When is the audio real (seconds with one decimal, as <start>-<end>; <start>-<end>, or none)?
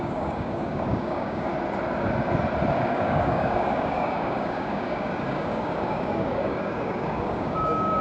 1.5-2.7